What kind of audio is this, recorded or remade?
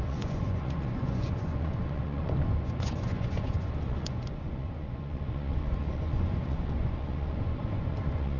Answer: remade